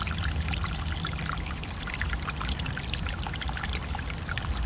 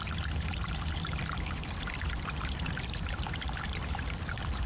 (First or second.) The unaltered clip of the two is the first